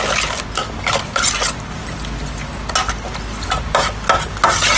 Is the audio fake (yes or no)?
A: no